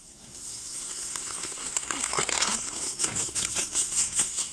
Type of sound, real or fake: fake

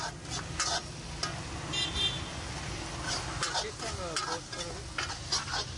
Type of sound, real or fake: real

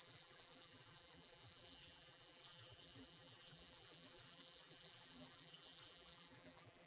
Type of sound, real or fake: fake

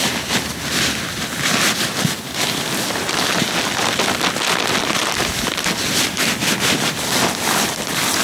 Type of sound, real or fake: real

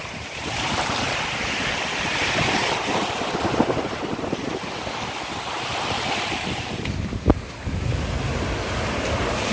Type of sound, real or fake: fake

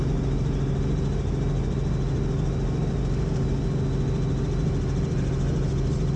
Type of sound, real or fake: real